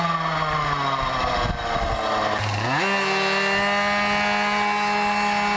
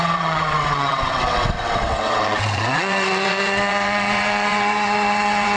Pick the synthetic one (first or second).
second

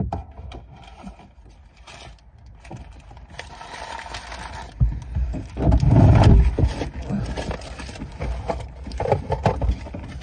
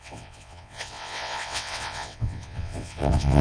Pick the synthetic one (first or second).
second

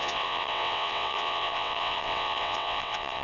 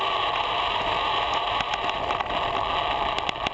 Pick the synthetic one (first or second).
first